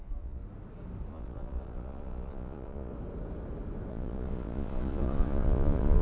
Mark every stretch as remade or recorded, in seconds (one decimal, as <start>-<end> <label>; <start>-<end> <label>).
0.0-0.4 remade; 0.4-1.1 recorded; 1.1-2.9 remade; 2.9-3.9 recorded; 3.9-6.0 remade